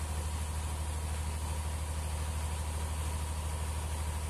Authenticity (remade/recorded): recorded